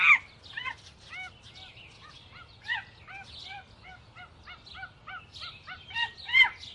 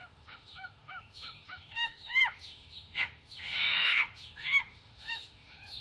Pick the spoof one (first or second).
second